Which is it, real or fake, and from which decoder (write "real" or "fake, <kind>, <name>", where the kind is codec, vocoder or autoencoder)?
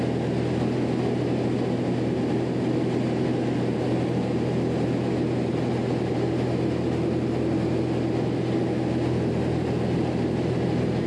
real